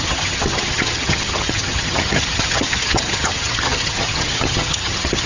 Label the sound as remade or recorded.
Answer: remade